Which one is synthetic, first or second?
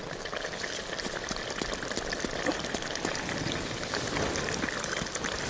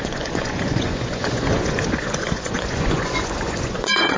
second